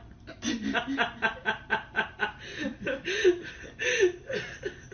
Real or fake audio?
real